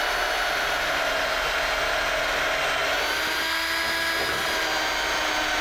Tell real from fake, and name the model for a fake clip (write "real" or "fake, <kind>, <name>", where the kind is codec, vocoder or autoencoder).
real